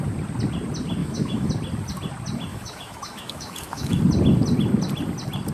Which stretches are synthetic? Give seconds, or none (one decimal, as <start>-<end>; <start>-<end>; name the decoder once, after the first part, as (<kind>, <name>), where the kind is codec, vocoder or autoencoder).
1.0-1.5 (autoencoder, DAC-VAE); 2.5-4.0